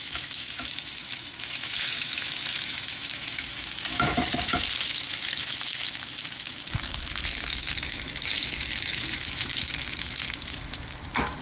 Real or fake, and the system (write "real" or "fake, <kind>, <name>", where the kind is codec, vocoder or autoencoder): fake, autoencoder, DAC-VAE